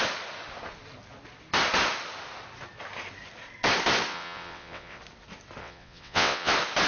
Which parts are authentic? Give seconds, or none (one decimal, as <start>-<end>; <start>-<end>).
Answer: 0.0-4.1; 5.0-5.6; 6.5-6.9